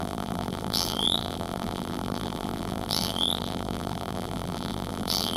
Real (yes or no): no